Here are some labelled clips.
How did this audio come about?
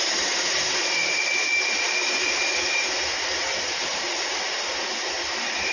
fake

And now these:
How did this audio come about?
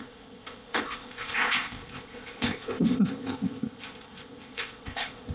fake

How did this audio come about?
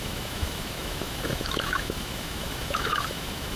fake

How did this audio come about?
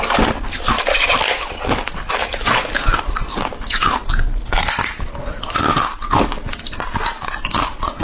real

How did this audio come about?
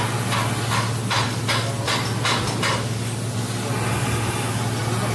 real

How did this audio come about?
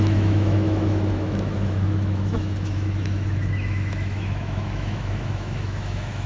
fake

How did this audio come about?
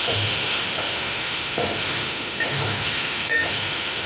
fake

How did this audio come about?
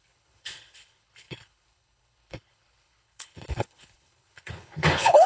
fake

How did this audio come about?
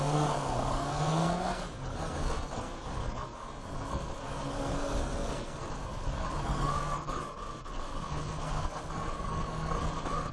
fake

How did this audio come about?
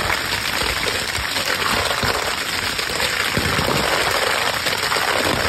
real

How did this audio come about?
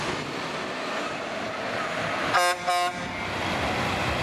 real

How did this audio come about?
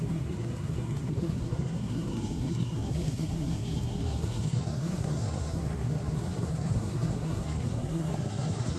fake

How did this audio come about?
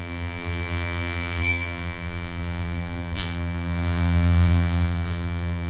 fake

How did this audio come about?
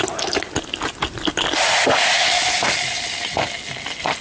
real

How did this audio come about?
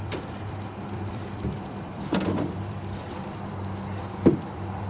fake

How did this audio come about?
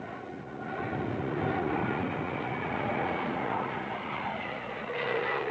fake